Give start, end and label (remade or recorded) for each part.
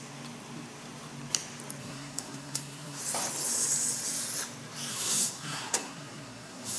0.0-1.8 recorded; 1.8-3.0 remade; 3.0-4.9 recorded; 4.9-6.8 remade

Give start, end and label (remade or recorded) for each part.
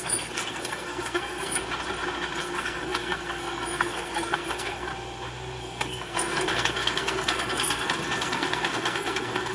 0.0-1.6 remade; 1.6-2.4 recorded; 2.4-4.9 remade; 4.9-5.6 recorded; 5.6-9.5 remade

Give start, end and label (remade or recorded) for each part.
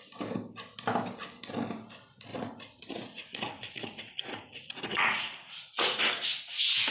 0.0-2.3 recorded; 2.3-6.0 remade; 6.0-6.9 recorded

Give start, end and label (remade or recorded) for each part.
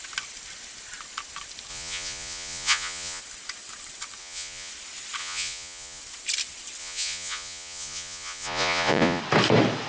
0.0-1.7 recorded; 1.7-3.2 remade; 3.2-4.2 recorded; 4.2-4.7 remade; 4.7-5.2 recorded; 5.2-6.0 remade; 6.0-6.8 recorded; 6.8-9.2 remade; 9.2-9.9 recorded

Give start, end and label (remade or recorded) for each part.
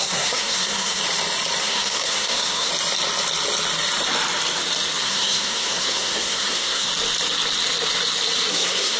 0.0-1.0 remade; 1.0-1.6 recorded; 1.6-2.7 remade; 2.7-5.0 recorded; 5.0-6.9 remade; 6.9-8.5 recorded; 8.5-9.0 remade